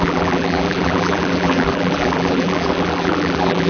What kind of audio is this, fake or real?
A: fake